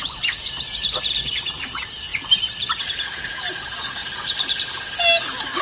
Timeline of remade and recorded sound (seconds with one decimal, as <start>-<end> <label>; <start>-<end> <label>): 0.0-1.2 remade; 1.2-5.6 recorded